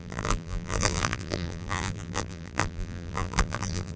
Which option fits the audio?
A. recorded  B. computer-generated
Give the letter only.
B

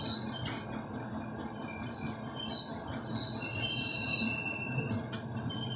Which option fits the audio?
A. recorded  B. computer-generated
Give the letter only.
A